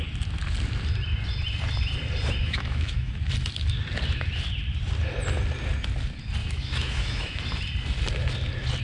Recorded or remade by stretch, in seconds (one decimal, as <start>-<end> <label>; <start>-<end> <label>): 0.0-2.4 recorded; 2.4-3.1 remade; 3.1-6.4 recorded; 6.4-7.4 remade; 7.4-8.8 recorded